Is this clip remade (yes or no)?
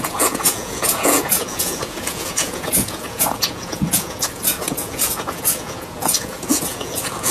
yes